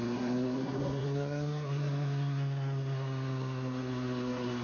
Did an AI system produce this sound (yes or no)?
yes